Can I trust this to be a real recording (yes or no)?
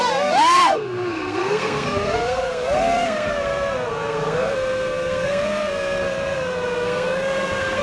no